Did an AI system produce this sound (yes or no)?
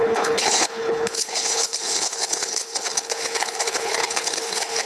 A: yes